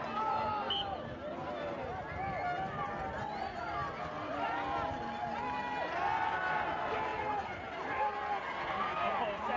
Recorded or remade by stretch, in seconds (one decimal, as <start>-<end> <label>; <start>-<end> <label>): 0.0-9.6 recorded